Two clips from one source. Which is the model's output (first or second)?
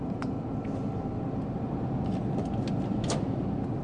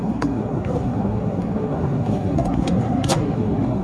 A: second